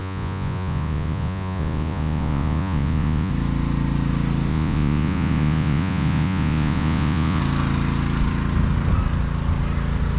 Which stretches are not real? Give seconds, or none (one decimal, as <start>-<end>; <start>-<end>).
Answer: 0.0-3.3; 4.5-7.4